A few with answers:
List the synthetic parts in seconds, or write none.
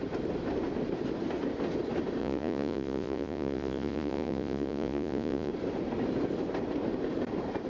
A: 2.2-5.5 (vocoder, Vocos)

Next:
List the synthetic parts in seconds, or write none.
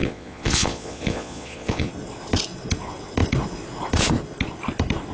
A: 0.0-1.9 (vocoder, Vocos)